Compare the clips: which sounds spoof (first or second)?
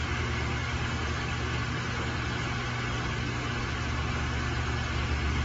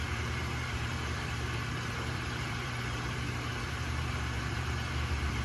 second